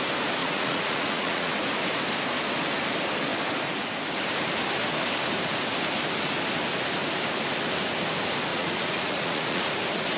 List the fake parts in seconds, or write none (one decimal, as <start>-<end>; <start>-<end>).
0.4-1.5; 8.5-9.7